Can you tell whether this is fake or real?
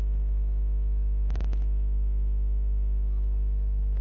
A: fake